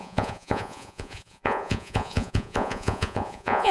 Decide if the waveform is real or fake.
fake